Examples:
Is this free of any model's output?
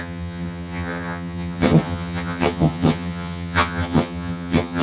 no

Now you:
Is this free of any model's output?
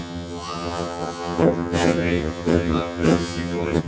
no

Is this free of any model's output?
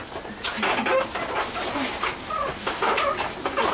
yes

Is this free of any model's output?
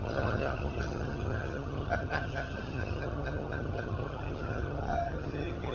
no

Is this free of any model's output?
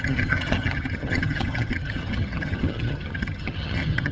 no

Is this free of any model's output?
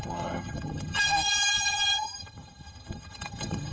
no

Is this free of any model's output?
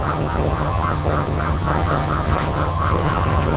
no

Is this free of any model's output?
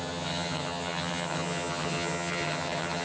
no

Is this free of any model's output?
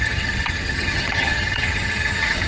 no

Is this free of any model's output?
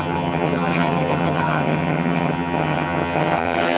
no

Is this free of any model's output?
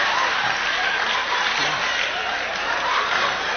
yes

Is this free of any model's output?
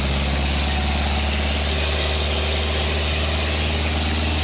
yes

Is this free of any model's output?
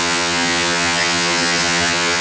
no